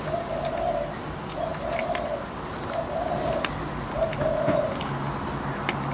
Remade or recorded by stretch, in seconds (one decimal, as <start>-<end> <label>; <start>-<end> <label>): 0.0-5.9 recorded